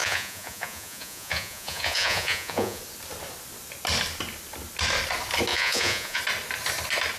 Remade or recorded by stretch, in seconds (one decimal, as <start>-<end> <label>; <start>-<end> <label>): 0.0-2.8 remade; 2.8-5.5 recorded; 5.5-6.2 remade; 6.2-7.2 recorded